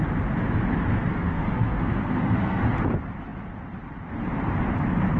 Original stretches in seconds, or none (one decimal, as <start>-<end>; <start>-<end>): 0.0-1.1; 2.6-5.2